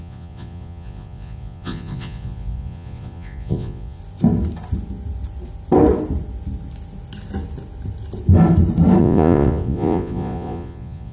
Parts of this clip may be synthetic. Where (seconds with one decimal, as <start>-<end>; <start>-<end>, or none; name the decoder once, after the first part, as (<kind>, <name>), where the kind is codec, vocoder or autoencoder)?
0.0-4.0 (vocoder, Vocos); 9.0-11.1